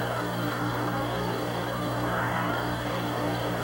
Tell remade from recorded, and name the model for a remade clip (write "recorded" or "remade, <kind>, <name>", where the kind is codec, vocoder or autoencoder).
remade, codec, DAC